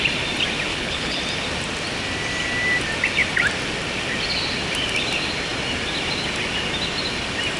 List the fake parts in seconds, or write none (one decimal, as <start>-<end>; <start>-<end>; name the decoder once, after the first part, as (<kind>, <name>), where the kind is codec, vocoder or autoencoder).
0.7-1.2 (codec, HILCodec)